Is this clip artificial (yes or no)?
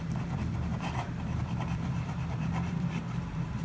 yes